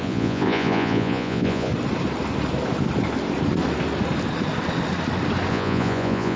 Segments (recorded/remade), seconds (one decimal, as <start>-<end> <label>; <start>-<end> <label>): 0.0-1.7 remade; 1.7-5.5 recorded; 5.5-6.4 remade